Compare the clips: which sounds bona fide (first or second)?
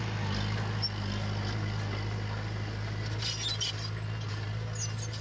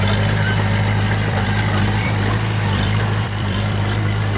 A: first